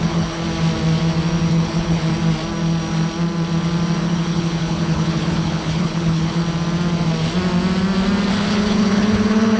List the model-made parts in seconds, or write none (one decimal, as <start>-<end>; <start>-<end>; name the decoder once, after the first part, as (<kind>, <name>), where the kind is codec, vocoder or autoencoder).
0.0-0.4 (codec, HILCodec); 1.5-2.1; 4.0-6.4; 8.3-9.6